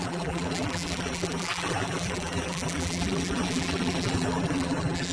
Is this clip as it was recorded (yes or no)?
no